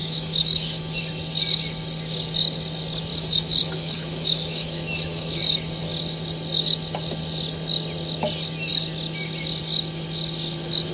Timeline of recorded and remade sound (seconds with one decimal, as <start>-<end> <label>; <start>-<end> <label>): 0.0-1.0 remade; 1.0-3.1 recorded; 3.1-5.4 remade; 5.4-10.9 recorded